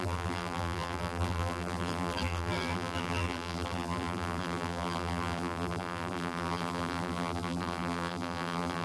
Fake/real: fake